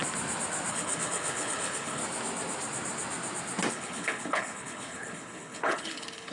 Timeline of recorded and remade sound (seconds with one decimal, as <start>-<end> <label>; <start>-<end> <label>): 0.0-0.7 recorded; 0.7-2.0 remade; 2.0-3.7 recorded; 3.7-6.3 remade

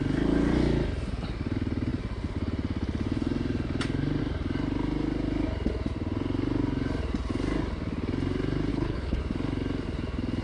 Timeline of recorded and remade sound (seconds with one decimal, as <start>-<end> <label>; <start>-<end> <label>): 0.0-8.7 recorded; 8.7-9.2 remade; 9.2-10.4 recorded

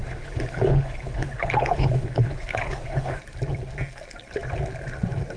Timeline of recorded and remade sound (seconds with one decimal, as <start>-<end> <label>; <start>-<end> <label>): 0.0-3.2 remade; 3.2-5.4 recorded

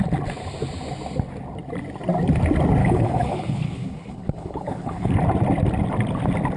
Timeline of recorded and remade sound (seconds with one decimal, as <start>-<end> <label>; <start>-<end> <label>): 0.0-2.8 recorded; 2.8-5.1 remade; 5.1-6.6 recorded

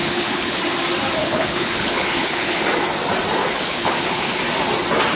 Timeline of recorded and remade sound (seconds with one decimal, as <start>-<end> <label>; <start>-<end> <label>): 0.0-0.6 remade; 0.6-1.2 recorded; 1.2-2.6 remade; 2.6-3.4 recorded; 3.4-4.4 remade; 4.4-5.2 recorded

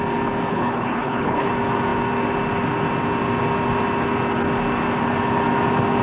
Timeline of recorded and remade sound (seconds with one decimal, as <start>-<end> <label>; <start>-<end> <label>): 0.0-0.5 recorded; 0.5-1.5 remade; 1.5-6.0 recorded

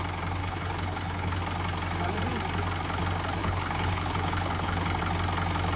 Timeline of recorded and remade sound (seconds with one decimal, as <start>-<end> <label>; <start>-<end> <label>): 0.0-0.4 recorded; 0.4-1.4 remade; 1.4-3.4 recorded; 3.4-5.0 remade; 5.0-5.8 recorded

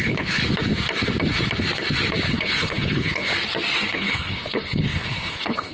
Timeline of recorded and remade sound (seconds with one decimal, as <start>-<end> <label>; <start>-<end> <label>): 0.0-0.4 remade; 0.4-2.3 recorded; 2.3-3.3 remade; 3.3-3.9 recorded; 3.9-5.7 remade